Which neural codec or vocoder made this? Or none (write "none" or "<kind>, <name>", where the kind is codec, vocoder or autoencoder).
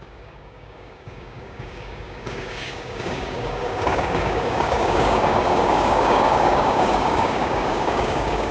codec, DAC